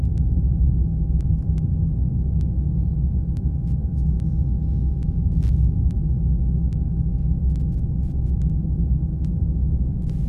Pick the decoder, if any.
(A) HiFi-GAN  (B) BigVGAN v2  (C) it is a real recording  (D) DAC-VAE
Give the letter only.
D